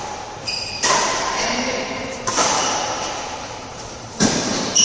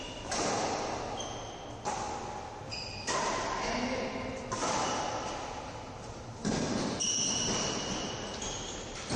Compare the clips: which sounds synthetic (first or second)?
first